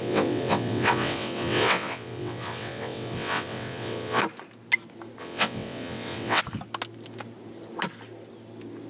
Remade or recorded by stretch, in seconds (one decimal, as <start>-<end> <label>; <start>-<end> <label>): 0.0-4.2 remade; 4.2-5.2 recorded; 5.2-6.4 remade; 6.4-8.9 recorded